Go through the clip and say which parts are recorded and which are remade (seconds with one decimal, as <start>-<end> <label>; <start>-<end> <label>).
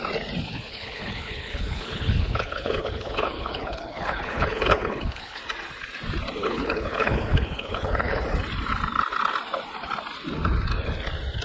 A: 0.0-0.5 recorded; 0.5-5.4 remade; 5.4-6.4 recorded; 6.4-8.2 remade; 8.2-11.4 recorded